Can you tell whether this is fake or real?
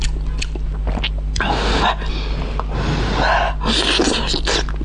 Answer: real